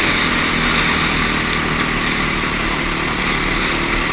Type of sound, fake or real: real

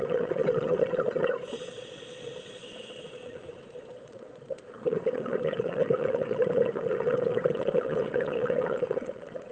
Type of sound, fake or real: fake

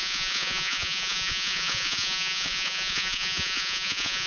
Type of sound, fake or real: fake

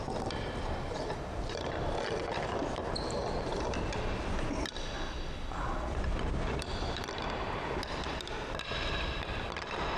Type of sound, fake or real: real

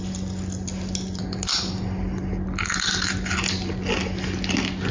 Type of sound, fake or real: real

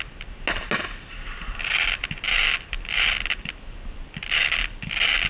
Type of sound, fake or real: real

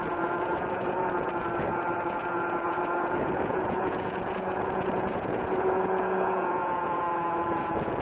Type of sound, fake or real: fake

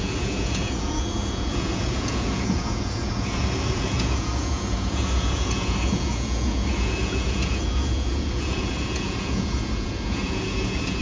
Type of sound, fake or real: fake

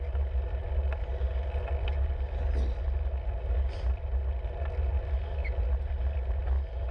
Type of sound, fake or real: real